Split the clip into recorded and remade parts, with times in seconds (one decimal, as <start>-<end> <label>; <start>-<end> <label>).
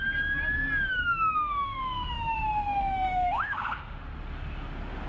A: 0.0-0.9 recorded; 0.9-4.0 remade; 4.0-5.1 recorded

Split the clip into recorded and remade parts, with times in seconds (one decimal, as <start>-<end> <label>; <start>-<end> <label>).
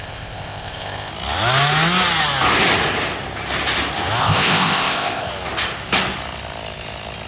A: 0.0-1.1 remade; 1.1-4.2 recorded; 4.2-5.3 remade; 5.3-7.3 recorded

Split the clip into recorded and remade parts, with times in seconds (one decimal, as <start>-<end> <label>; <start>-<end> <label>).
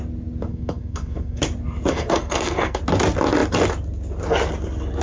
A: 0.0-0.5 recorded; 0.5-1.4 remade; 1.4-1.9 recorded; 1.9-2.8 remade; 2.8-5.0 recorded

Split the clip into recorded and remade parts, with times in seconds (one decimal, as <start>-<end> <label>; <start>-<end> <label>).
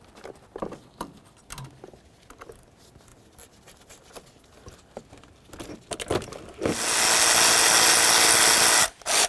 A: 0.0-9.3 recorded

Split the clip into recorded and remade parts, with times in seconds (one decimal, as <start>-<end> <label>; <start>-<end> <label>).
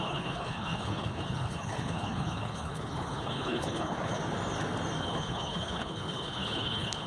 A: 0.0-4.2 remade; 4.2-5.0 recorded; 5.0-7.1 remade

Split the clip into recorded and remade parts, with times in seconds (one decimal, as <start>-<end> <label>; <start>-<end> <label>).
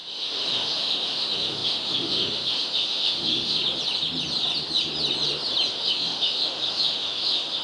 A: 0.0-3.6 remade; 3.6-5.7 recorded; 5.7-7.6 remade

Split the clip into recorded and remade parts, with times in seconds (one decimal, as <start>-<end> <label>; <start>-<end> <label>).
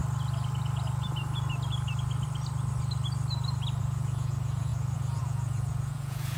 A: 0.0-3.8 recorded; 3.8-6.4 remade